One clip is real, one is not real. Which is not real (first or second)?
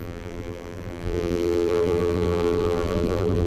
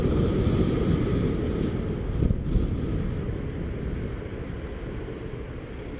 first